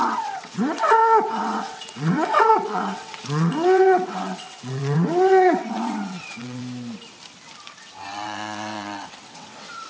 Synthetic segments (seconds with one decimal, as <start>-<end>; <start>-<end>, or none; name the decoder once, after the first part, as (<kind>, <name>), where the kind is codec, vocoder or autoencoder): 0.0-6.6 (vocoder, WaveNeXt); 7.8-9.9